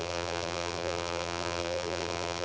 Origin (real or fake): fake